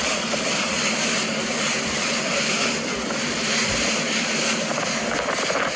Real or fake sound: fake